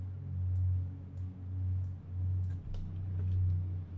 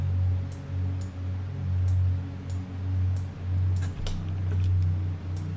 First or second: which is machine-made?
first